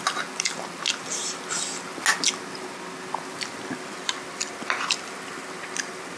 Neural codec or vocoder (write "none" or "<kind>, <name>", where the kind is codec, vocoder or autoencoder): none